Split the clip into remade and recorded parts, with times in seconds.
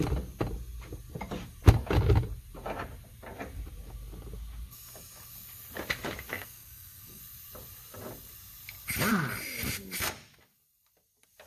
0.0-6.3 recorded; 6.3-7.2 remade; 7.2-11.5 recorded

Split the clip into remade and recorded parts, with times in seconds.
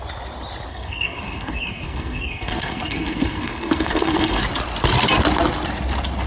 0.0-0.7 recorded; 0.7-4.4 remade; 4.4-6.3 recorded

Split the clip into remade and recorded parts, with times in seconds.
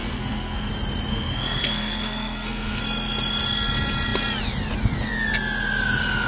0.0-0.7 remade; 0.7-1.1 recorded; 1.1-2.8 remade; 2.8-6.3 recorded